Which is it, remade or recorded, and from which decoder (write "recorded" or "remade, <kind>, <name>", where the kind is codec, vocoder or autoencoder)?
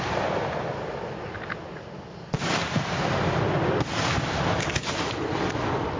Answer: recorded